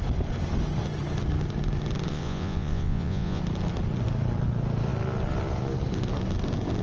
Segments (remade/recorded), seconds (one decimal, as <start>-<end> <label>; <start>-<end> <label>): 0.0-2.1 recorded; 2.1-3.4 remade; 3.4-6.8 recorded

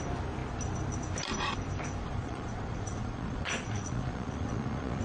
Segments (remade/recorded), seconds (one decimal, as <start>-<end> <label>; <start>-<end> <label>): 0.0-2.0 recorded; 2.0-5.0 remade

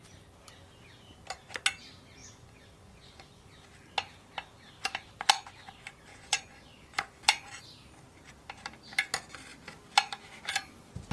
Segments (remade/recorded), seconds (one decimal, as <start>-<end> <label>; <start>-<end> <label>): 0.0-2.2 recorded; 2.2-3.5 remade; 3.5-6.1 recorded; 6.1-7.6 remade; 7.6-11.1 recorded

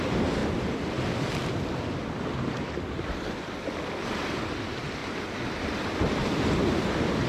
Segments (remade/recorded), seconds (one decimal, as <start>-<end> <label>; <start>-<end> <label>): 0.0-7.3 recorded

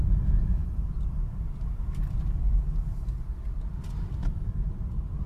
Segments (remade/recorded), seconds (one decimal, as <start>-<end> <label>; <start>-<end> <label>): 0.0-5.3 recorded

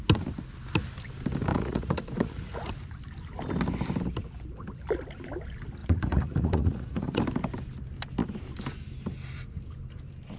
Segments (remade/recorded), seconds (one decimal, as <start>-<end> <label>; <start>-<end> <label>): 0.0-1.5 recorded; 1.5-2.7 remade; 2.7-5.8 recorded; 5.8-7.2 remade; 7.2-10.4 recorded

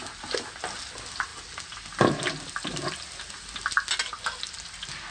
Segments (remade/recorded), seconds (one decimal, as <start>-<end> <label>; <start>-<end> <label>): 0.0-5.1 recorded

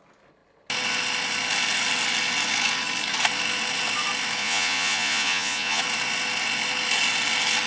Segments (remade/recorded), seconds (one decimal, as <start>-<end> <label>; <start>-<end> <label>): 0.0-4.4 recorded; 4.4-5.8 remade; 5.8-7.7 recorded